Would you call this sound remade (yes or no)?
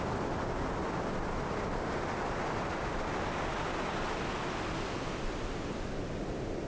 no